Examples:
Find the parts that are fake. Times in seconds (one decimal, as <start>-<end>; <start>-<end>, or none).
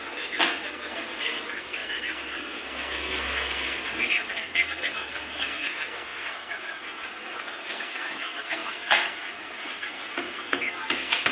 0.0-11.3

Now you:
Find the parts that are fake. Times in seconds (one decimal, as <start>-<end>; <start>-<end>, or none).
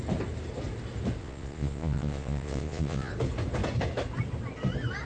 1.2-3.1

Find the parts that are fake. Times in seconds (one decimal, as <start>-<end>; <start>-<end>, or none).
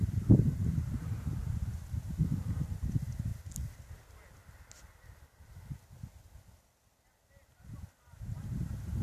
0.0-3.3; 8.1-9.0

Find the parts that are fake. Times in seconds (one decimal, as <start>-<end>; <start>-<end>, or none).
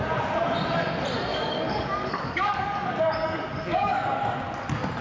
1.3-4.2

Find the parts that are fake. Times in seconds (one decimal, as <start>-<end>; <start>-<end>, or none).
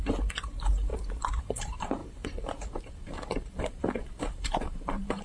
0.0-0.9; 1.4-5.2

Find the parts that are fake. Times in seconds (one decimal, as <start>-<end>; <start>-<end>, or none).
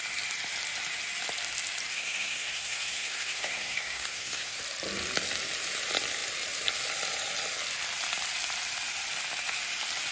1.9-4.6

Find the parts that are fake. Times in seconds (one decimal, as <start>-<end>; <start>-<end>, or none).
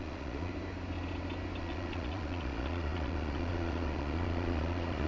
0.0-0.5; 1.6-5.1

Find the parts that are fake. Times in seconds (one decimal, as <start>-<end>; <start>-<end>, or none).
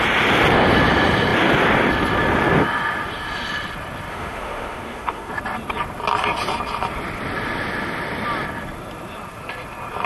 4.1-5.3